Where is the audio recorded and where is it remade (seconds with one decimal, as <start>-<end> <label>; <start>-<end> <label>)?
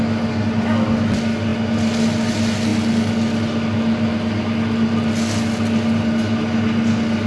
0.0-7.3 recorded